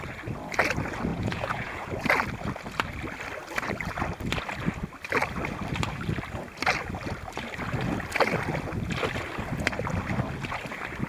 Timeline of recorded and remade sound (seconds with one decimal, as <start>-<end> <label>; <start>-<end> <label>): 0.0-1.1 recorded; 1.1-1.9 remade; 1.9-11.1 recorded